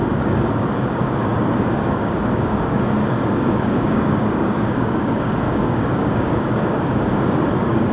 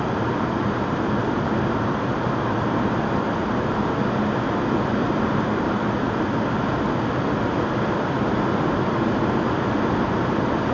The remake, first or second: first